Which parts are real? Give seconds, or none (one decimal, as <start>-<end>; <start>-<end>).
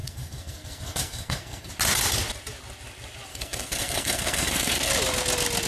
1.7-3.3; 4.9-5.7